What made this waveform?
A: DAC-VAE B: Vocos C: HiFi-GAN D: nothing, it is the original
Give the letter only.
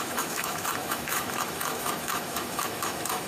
A